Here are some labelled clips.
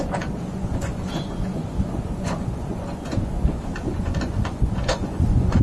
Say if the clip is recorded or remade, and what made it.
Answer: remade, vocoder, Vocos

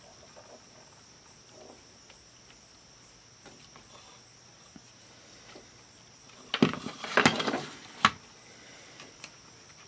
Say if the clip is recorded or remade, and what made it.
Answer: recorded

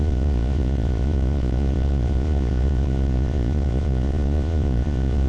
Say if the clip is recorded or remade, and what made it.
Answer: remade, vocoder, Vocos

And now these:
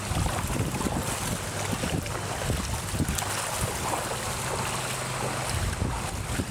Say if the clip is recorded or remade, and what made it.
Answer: recorded